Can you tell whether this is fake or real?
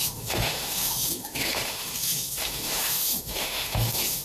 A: fake